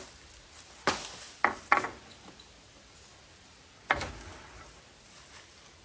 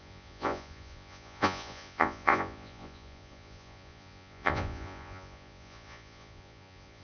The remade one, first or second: second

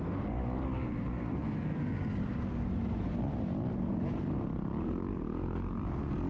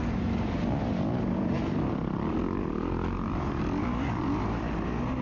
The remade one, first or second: second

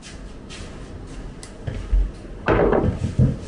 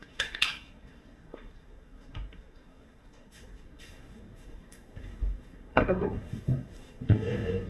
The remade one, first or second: second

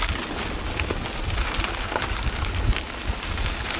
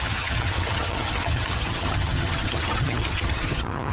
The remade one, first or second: second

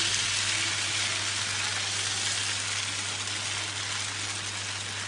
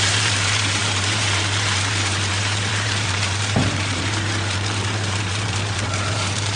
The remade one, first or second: second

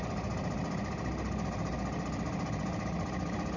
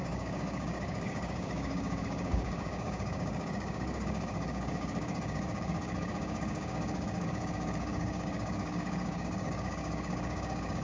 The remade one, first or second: second